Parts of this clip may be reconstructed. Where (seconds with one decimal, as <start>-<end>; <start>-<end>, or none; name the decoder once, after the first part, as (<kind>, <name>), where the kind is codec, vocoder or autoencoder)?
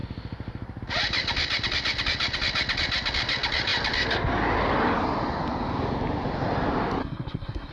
7.0-7.7 (codec, SNAC)